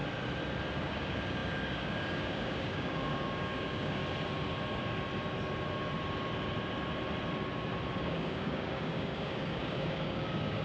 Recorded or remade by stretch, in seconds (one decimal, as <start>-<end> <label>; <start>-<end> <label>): 0.0-0.8 recorded; 0.8-4.0 remade; 4.0-8.0 recorded; 8.0-10.6 remade